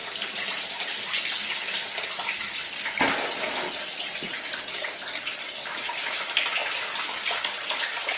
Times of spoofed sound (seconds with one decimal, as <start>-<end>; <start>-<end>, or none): none